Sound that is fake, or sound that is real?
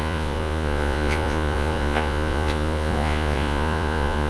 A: fake